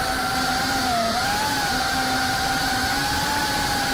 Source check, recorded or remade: remade